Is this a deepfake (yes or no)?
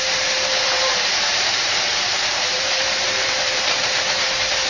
yes